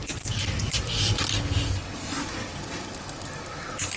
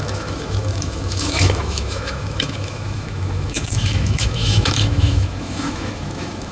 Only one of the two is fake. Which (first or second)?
second